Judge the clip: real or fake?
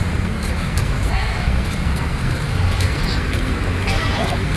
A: fake